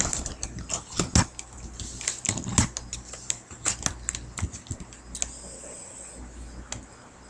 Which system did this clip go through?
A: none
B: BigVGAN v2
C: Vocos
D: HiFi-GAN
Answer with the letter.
A